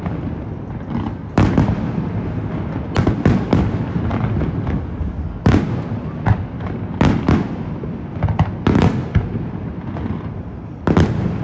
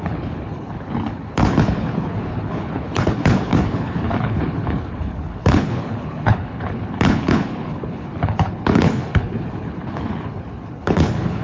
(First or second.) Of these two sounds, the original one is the first